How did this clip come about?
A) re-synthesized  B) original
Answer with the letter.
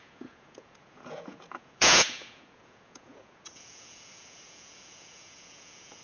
A